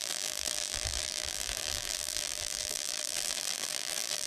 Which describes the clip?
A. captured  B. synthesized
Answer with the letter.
B